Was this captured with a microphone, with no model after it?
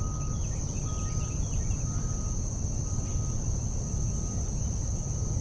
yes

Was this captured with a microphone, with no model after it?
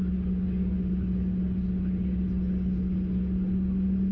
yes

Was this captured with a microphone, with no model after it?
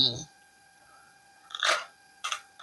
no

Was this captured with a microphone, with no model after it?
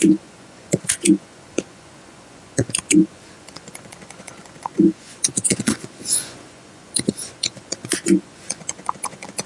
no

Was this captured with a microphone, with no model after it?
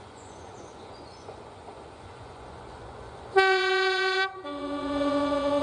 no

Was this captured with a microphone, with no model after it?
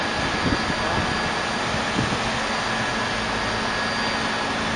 yes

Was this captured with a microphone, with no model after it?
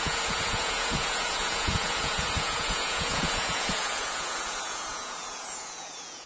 no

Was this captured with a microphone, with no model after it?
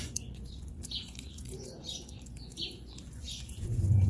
no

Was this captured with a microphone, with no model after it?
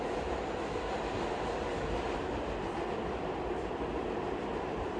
yes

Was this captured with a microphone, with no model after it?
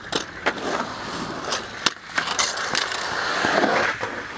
yes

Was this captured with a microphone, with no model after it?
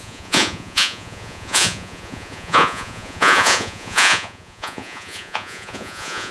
no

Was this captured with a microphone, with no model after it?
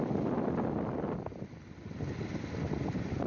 yes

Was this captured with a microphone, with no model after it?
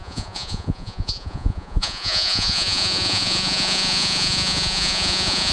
no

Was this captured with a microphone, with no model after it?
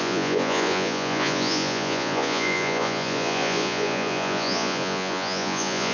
no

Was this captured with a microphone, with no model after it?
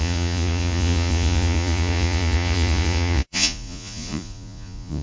no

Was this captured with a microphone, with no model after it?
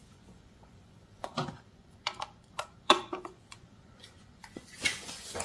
no